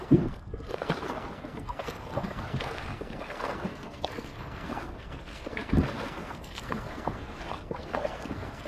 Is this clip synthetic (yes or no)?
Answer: yes